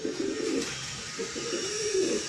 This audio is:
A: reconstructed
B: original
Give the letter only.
B